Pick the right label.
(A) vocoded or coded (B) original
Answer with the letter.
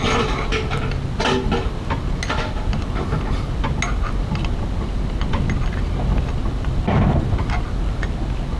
B